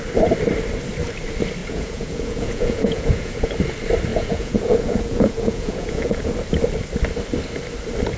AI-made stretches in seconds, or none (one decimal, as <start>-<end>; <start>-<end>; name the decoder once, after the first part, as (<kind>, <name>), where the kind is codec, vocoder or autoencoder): 1.6-3.5 (vocoder, Vocos); 4.1-6.3